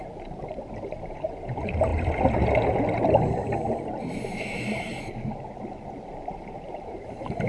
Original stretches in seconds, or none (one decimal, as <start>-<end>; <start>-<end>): 1.9-4.4; 4.9-6.3